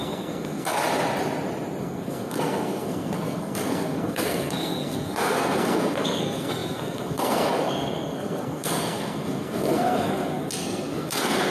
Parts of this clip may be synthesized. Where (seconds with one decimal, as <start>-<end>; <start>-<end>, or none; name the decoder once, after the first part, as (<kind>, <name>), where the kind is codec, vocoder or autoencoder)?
0.0-0.8 (codec, SNAC); 1.8-11.5